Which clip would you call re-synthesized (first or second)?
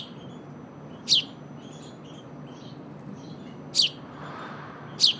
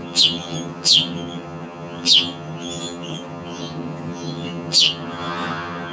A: second